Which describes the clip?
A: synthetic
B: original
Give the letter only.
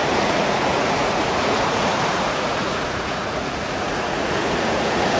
A